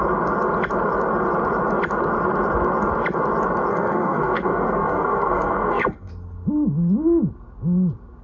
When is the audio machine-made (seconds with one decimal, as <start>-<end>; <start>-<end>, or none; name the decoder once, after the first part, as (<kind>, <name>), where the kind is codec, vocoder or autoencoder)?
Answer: 3.7-6.1 (codec, SNAC)